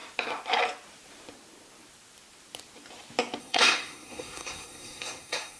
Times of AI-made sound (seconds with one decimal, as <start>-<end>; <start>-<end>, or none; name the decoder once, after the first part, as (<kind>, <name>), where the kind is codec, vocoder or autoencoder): 3.4-5.6 (codec, SNAC)